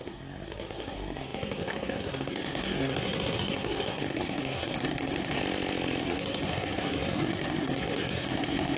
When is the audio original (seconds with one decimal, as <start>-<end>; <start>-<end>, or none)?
5.4-6.0